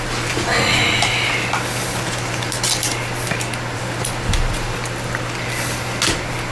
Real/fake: real